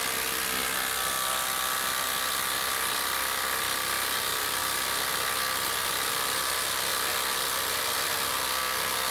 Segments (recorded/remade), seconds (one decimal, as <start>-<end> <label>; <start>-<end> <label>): 0.0-0.6 remade; 0.6-1.6 recorded; 1.6-9.1 remade